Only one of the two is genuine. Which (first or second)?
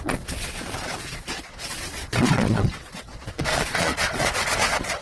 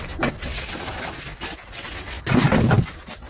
second